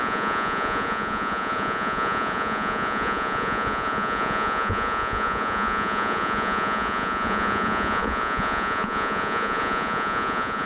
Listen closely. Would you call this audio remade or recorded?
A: remade